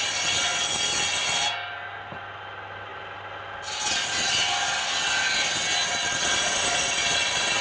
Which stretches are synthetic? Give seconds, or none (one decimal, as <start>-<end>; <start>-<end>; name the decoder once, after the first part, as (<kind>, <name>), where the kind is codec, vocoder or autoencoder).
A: none